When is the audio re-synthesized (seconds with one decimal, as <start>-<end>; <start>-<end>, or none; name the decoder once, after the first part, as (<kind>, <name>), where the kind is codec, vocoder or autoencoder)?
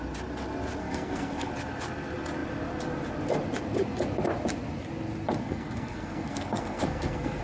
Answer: 0.8-1.5 (codec, SNAC); 5.4-7.4